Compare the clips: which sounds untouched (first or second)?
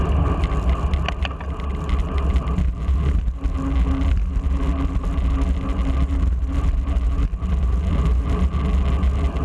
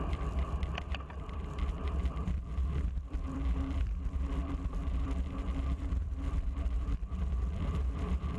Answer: first